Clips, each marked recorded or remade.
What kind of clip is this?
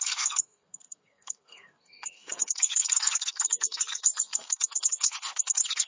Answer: remade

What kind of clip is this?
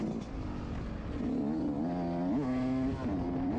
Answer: recorded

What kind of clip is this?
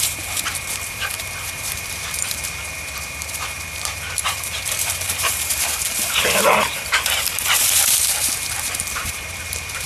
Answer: remade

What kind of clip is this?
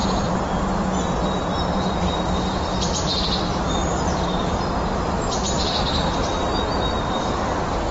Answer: remade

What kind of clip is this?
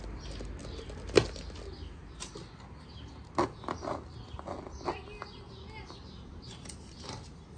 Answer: recorded